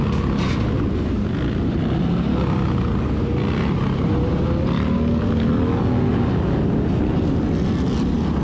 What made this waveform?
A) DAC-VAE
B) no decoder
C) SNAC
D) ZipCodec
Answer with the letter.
B